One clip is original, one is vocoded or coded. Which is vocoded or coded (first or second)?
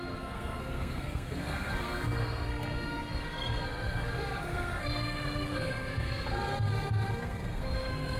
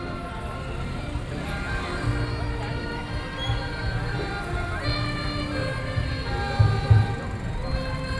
first